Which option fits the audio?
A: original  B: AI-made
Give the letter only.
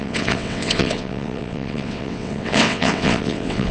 B